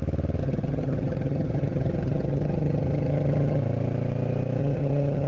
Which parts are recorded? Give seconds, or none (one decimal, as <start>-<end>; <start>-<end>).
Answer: 0.0-0.4; 3.6-4.6